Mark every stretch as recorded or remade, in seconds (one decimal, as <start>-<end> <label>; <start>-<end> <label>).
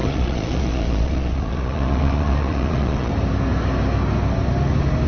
0.0-3.1 remade; 3.1-5.1 recorded